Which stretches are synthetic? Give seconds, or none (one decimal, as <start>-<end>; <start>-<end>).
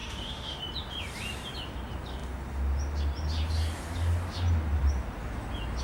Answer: 0.0-0.6